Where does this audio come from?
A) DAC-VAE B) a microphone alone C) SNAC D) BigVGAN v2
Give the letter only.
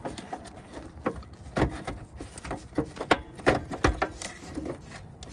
B